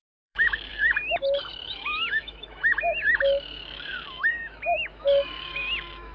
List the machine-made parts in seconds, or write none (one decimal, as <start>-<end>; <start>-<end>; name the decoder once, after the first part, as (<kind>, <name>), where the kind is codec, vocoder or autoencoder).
0.0-6.1 (autoencoder, DAC-VAE)